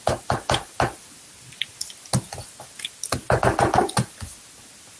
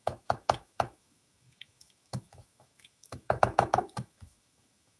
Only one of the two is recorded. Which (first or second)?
first